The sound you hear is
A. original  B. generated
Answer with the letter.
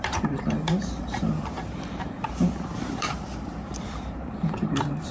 B